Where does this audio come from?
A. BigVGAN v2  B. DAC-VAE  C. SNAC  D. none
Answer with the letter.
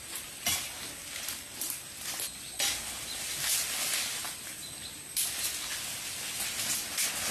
D